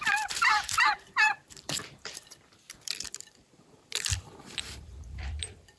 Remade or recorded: remade